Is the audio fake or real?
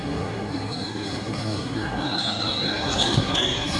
fake